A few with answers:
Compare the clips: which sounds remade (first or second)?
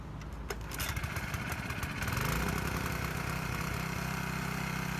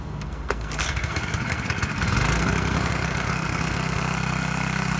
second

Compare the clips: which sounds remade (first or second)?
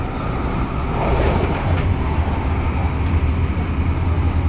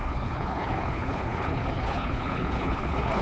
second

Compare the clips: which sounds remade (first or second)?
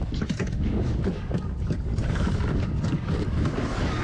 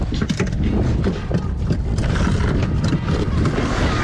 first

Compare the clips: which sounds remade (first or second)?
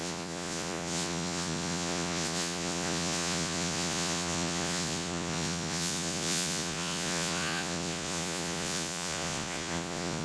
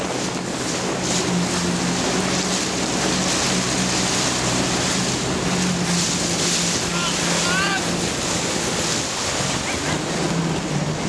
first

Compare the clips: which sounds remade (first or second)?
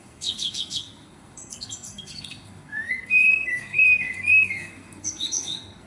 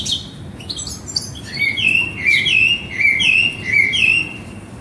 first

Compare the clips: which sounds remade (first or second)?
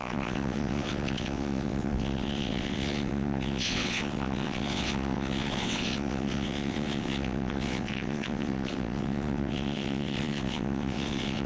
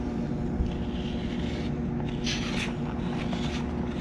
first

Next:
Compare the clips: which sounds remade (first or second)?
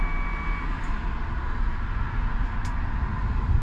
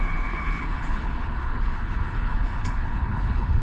second